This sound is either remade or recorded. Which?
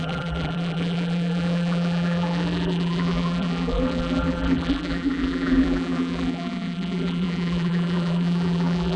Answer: remade